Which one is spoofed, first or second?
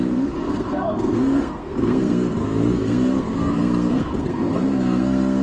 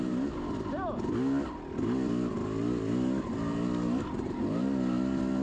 first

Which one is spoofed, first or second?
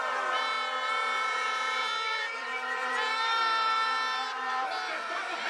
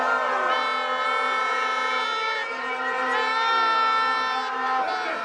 first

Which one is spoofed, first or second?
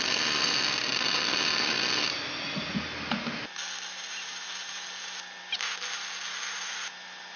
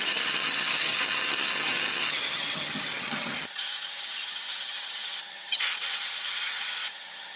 second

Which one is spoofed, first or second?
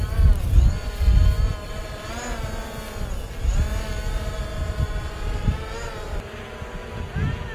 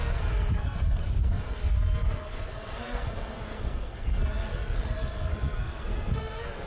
second